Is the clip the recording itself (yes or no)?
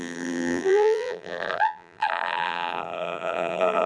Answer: no